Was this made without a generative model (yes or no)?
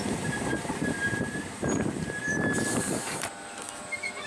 no